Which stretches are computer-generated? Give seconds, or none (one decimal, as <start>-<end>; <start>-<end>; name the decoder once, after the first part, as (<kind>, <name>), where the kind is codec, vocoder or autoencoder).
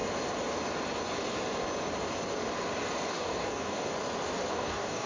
3.1-3.9 (codec, DAC); 4.5-5.1